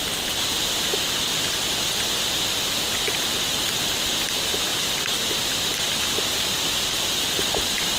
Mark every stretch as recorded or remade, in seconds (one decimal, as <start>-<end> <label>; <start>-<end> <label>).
0.0-8.0 recorded